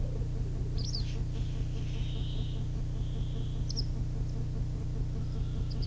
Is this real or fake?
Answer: real